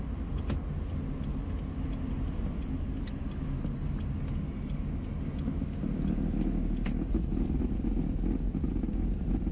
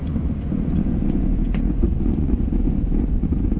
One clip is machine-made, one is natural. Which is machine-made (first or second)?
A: second